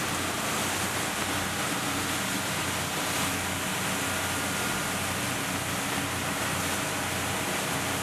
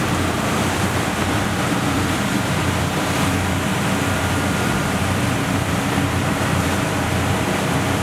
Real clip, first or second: first